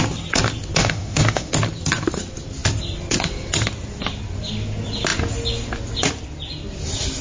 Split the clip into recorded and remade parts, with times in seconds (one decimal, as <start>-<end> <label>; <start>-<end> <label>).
0.0-0.8 recorded; 0.8-1.5 remade; 1.5-7.2 recorded

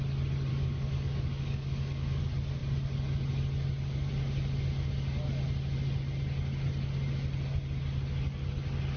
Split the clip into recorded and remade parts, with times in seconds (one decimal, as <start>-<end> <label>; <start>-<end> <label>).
0.0-0.5 recorded; 0.5-2.2 remade; 2.2-9.0 recorded

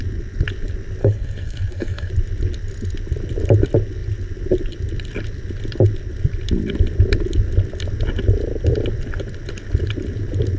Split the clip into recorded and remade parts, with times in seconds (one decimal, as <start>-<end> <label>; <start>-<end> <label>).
0.0-1.0 recorded; 1.0-2.1 remade; 2.1-10.6 recorded

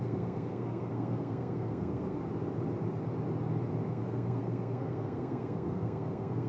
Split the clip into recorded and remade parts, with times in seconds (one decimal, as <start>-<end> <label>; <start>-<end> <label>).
0.0-2.2 remade; 2.2-3.9 recorded; 3.9-6.5 remade

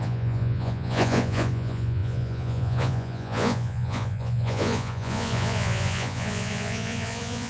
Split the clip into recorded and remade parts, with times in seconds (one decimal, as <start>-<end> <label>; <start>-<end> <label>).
0.0-7.5 remade

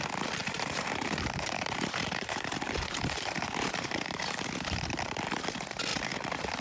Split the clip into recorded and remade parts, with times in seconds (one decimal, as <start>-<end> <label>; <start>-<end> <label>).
0.0-0.4 recorded; 0.4-4.4 remade; 4.4-5.9 recorded; 5.9-6.6 remade